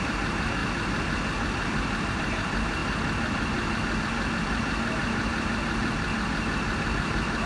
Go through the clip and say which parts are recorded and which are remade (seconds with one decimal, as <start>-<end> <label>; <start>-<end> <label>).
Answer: 0.0-0.6 remade; 0.6-2.1 recorded; 2.1-2.8 remade; 2.8-4.0 recorded; 4.0-5.3 remade; 5.3-6.9 recorded; 6.9-7.5 remade